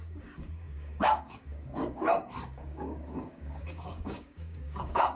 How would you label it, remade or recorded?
remade